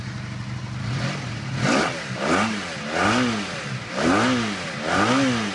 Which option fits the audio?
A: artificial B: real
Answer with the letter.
B